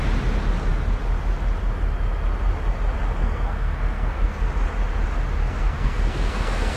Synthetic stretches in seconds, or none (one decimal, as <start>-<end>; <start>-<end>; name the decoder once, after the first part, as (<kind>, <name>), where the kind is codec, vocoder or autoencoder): 3.2-4.5 (codec, SNAC); 5.4-6.8